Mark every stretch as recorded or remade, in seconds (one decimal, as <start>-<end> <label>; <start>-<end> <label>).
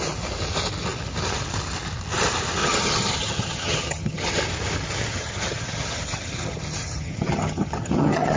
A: 0.0-2.6 recorded; 2.6-4.4 remade; 4.4-5.1 recorded; 5.1-8.4 remade